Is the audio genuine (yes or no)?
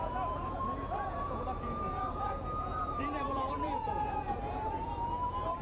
no